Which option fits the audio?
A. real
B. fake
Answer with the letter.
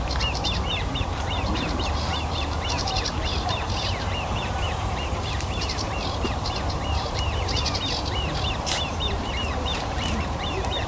B